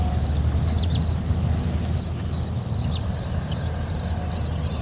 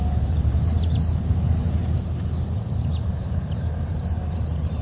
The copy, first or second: second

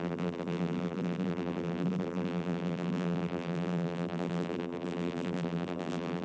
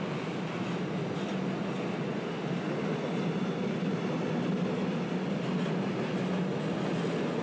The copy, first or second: first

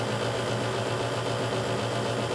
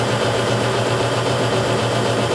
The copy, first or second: second